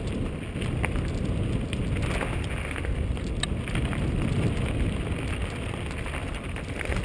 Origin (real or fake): real